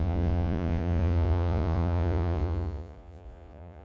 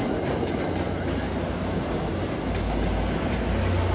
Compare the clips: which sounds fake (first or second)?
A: first